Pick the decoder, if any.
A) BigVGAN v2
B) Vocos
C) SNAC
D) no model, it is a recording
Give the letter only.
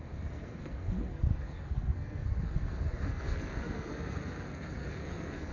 C